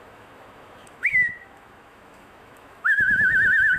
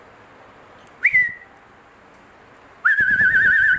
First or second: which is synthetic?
first